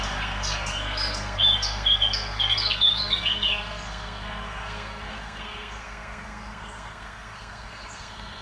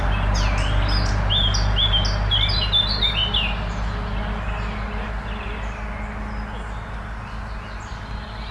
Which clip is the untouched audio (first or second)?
second